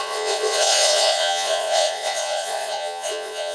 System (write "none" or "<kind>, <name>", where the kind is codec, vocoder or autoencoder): vocoder, Vocos